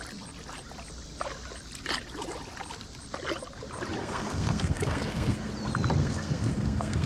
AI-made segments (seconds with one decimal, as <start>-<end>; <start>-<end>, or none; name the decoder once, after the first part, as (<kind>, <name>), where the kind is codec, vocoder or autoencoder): 4.0-5.5 (codec, SNAC); 6.0-7.1